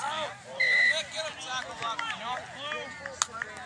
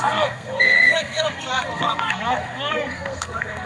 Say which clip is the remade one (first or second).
second